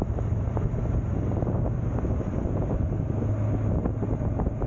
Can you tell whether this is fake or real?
real